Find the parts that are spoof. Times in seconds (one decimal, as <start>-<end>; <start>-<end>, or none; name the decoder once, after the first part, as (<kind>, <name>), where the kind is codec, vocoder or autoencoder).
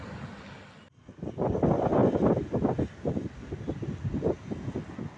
none